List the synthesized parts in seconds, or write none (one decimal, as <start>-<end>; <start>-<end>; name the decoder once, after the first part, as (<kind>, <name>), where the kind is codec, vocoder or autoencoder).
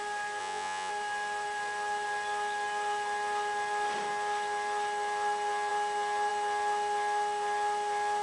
0.4-0.9 (vocoder, Vocos)